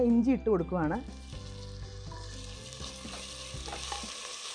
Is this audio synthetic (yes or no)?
no